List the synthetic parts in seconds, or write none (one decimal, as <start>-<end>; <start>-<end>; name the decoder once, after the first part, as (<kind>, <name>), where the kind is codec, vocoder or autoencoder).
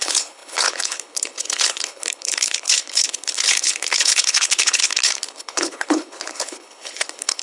0.0-7.4 (codec, HILCodec)